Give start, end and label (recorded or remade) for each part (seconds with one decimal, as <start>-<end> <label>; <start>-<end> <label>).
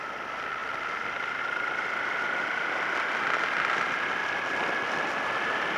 0.0-5.8 recorded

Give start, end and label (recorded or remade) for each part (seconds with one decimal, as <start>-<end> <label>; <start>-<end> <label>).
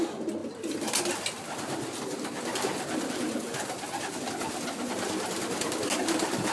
0.0-6.5 recorded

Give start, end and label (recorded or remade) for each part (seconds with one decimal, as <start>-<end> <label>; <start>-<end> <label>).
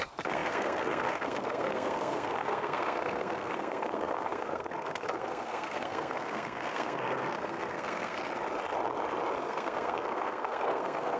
0.0-8.2 remade; 8.2-9.4 recorded; 9.4-11.2 remade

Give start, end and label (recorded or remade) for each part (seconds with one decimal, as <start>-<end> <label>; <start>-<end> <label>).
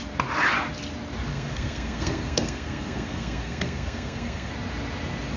0.0-1.3 recorded; 1.3-4.5 remade; 4.5-5.4 recorded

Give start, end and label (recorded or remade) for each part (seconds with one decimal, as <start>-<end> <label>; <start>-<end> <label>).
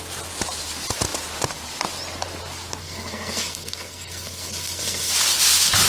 0.0-2.8 recorded; 2.8-5.1 remade; 5.1-5.9 recorded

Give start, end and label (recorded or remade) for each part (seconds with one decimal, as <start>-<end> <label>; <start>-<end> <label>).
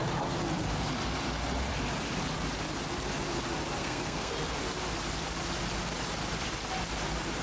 0.0-3.8 recorded; 3.8-4.3 remade; 4.3-7.4 recorded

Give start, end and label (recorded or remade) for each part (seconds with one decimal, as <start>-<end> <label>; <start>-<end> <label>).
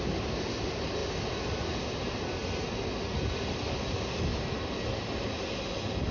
0.0-6.1 recorded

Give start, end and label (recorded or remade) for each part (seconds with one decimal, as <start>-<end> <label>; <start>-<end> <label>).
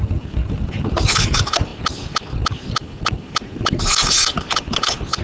0.0-5.2 recorded